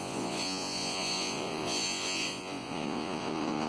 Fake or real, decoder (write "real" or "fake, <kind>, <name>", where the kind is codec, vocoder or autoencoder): fake, vocoder, Vocos